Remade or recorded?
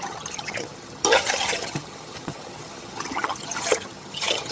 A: remade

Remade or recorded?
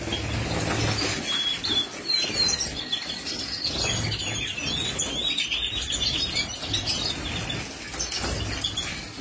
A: recorded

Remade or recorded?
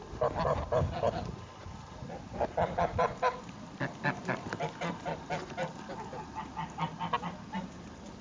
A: recorded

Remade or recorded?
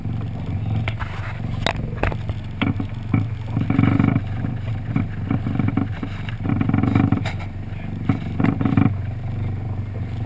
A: recorded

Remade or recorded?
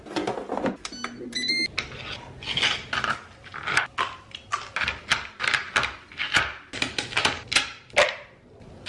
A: recorded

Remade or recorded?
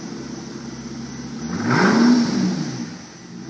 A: recorded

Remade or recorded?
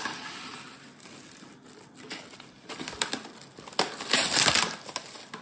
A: recorded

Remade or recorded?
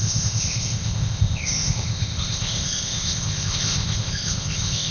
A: remade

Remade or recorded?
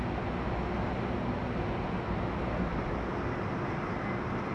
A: recorded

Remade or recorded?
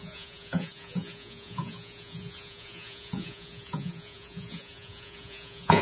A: remade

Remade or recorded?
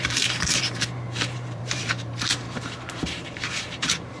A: remade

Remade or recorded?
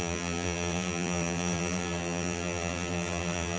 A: remade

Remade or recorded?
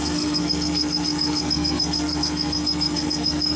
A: remade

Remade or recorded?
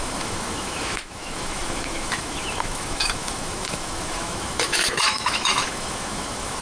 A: remade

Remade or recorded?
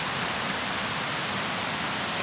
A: recorded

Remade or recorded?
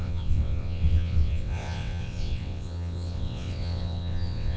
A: remade